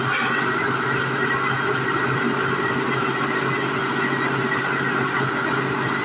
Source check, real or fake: real